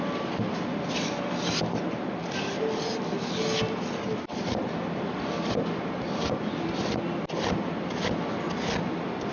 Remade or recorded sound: recorded